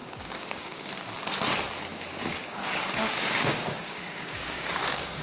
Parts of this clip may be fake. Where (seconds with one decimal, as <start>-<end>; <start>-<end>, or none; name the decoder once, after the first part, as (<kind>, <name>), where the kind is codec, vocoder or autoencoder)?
0.0-0.9 (codec, DAC); 1.9-5.2

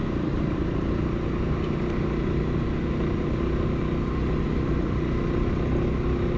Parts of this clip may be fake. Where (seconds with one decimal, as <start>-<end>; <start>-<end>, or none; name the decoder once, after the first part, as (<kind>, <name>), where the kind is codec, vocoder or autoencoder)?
0.0-3.8 (vocoder, BigVGAN v2)

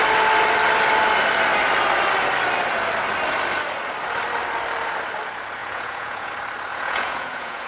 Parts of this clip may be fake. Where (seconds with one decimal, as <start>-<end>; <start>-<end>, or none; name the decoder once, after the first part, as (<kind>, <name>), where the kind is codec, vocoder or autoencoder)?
5.6-6.3 (vocoder, Vocos); 6.7-7.7

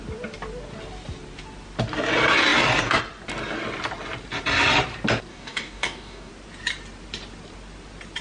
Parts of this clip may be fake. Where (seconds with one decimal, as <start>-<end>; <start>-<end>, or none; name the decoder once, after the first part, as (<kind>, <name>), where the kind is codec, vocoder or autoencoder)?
5.3-6.3 (codec, DAC)

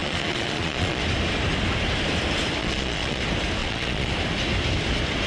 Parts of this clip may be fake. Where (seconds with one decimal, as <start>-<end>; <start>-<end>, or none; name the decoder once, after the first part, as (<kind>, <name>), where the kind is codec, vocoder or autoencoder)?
0.0-1.0 (vocoder, Vocos); 2.6-3.2; 3.6-4.1